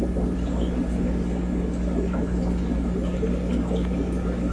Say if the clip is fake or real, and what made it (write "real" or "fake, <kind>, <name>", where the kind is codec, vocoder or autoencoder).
fake, codec, DAC